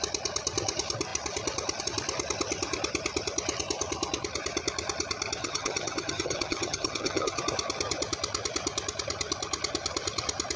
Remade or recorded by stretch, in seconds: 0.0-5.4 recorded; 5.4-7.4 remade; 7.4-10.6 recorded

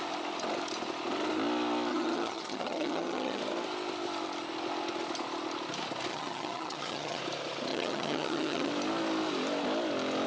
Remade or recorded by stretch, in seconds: 0.0-1.9 recorded; 1.9-3.4 remade; 3.4-6.1 recorded; 6.1-7.2 remade; 7.2-7.7 recorded; 7.7-8.7 remade; 8.7-10.3 recorded

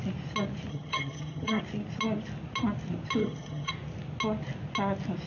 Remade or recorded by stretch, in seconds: 0.0-0.7 recorded; 0.7-1.6 remade; 1.6-3.2 recorded; 3.2-3.7 remade; 3.7-5.3 recorded